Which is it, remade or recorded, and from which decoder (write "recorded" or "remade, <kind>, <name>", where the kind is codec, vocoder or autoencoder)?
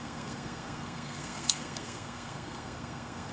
remade, codec, SNAC